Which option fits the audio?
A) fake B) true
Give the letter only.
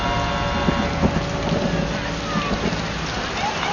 B